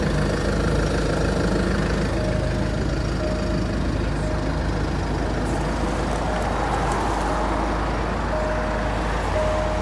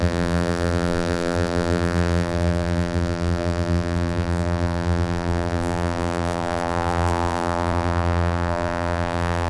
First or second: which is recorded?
first